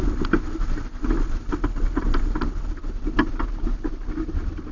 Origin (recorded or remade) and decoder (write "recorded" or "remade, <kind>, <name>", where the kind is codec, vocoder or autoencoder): recorded